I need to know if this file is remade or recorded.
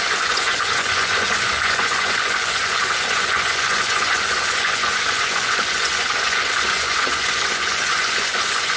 remade